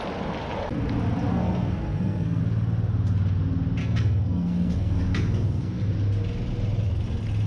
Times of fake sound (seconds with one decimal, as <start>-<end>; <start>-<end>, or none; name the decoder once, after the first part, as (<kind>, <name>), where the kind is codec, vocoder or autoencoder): 1.3-2.4 (codec, SNAC); 3.8-5.9